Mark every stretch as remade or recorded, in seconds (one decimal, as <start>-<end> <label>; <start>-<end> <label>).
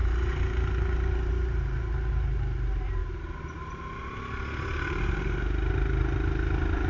0.0-6.9 recorded